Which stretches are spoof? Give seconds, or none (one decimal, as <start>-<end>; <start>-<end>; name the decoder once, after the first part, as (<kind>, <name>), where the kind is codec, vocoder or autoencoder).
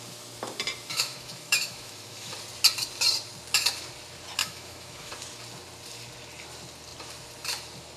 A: 0.9-2.3 (autoencoder, DAC-VAE); 4.4-5.1